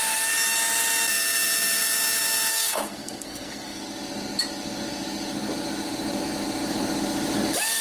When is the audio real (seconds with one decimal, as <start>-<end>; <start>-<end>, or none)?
0.0-2.5; 3.8-7.8